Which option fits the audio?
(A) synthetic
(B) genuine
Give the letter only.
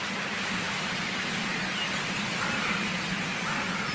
B